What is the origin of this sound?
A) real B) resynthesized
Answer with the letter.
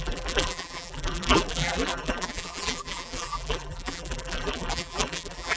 B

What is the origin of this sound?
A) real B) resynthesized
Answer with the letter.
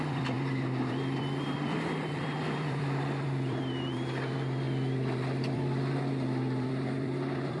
B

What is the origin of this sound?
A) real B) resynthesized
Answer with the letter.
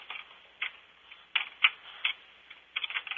A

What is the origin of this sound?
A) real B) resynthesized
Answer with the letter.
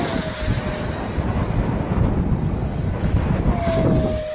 A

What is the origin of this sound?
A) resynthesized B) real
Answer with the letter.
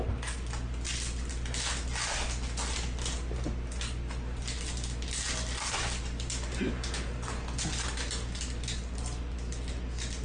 B